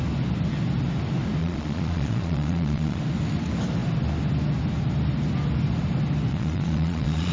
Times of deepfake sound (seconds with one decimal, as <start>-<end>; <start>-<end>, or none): 1.4-3.0; 6.3-7.3

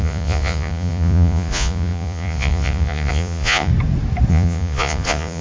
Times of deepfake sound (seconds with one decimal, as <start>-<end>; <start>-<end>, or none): 0.0-3.7; 4.3-5.4

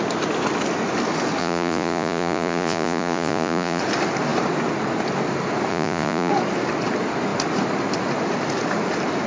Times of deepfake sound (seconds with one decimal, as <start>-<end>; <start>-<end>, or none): 1.4-3.8; 5.7-6.3

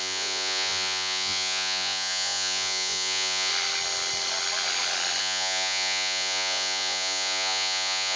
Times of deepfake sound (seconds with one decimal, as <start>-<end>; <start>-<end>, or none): 0.0-3.5; 5.2-8.2

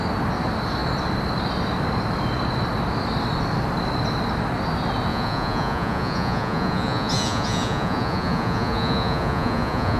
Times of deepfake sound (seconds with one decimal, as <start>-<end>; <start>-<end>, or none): 5.1-10.0

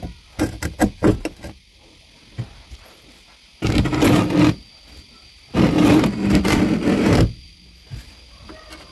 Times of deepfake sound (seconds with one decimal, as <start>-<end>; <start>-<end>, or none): none

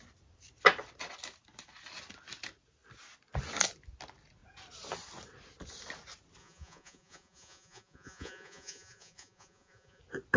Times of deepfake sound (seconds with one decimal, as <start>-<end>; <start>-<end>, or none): 6.4-10.0